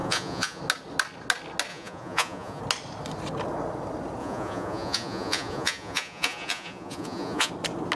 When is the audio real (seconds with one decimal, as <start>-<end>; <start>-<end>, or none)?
0.6-1.7; 2.6-4.2; 7.5-8.0